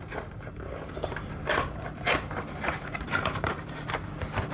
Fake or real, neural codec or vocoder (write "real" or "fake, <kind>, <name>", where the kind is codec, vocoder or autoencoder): fake, vocoder, BigVGAN v2